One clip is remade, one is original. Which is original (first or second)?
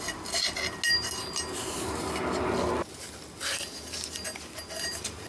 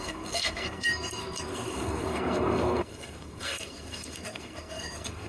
first